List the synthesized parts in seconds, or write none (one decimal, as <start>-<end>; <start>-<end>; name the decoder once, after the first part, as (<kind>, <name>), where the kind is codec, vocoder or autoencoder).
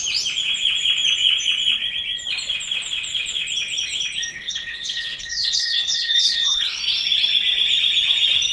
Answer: 4.3-6.8 (codec, HILCodec)